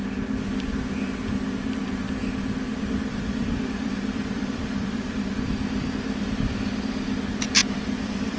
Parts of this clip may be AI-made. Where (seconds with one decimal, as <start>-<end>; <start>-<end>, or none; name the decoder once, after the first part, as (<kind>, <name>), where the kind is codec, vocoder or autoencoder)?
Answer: 3.1-5.2 (vocoder, BigVGAN v2); 7.6-8.4